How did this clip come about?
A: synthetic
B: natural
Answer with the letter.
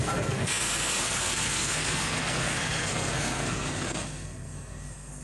A